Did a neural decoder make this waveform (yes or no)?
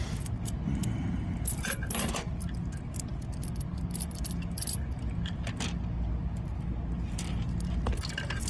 no